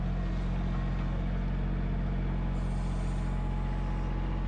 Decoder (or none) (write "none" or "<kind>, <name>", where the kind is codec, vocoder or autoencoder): none